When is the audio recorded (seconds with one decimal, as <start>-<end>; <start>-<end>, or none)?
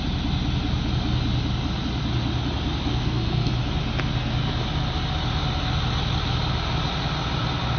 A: 0.0-2.9; 3.5-7.8